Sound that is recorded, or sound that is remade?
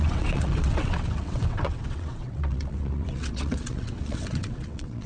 remade